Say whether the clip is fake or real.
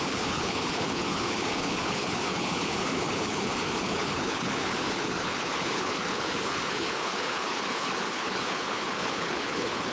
fake